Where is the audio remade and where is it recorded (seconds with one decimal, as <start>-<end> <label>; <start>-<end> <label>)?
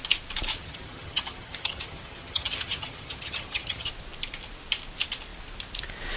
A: 0.0-0.5 recorded; 0.5-3.9 remade; 3.9-6.2 recorded